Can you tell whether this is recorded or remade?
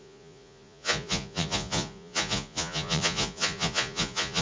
remade